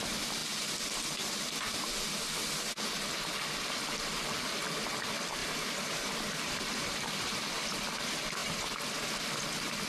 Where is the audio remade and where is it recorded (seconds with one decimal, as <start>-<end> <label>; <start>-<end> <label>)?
0.0-5.4 recorded; 5.4-7.8 remade; 7.8-9.9 recorded